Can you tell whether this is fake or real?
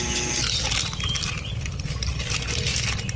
real